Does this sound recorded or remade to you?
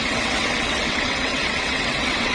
remade